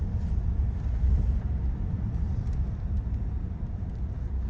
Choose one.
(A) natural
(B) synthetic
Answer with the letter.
B